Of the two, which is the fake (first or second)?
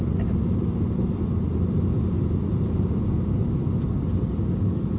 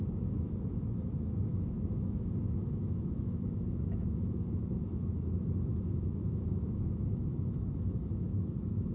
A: second